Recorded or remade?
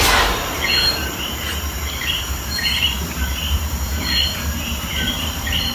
remade